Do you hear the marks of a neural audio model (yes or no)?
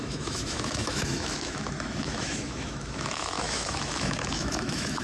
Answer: yes